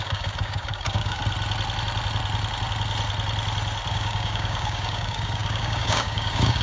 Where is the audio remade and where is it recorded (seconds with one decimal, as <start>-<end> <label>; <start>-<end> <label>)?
0.0-1.2 remade; 1.2-3.9 recorded; 3.9-6.6 remade